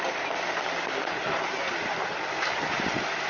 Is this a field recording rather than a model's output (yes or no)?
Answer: yes